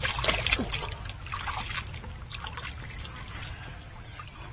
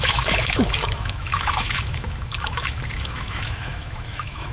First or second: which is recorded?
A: first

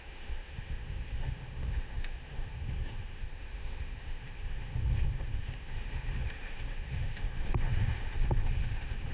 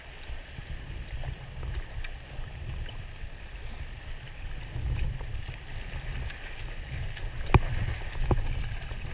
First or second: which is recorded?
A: second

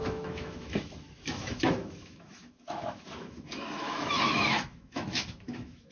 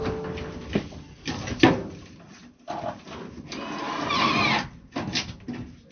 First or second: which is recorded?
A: second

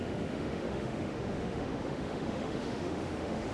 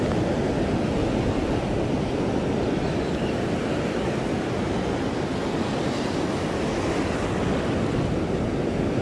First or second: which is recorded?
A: second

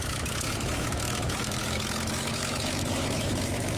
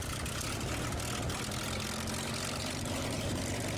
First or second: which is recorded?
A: second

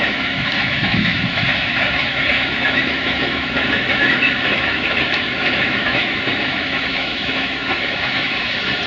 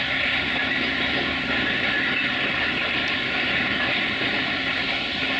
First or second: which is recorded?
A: second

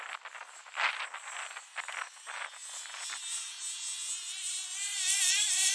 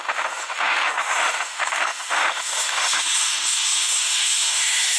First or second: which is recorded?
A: first